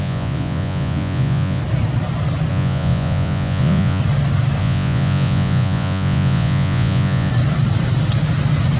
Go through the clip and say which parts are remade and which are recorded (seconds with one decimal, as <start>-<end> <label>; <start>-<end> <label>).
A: 0.0-1.6 remade; 1.6-2.5 recorded; 2.5-4.0 remade; 4.0-4.6 recorded; 4.6-7.3 remade; 7.3-8.8 recorded